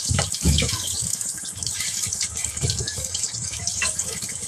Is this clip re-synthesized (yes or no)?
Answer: yes